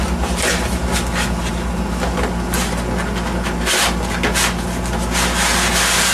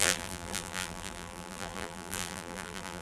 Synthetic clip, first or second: second